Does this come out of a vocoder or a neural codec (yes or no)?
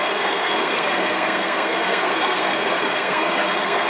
yes